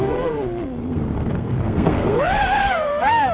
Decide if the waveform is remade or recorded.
remade